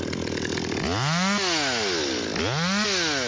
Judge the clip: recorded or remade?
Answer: recorded